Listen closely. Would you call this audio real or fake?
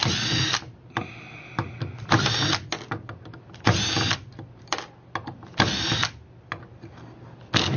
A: real